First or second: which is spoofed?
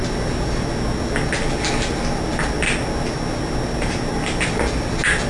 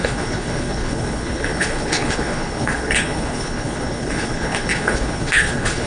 second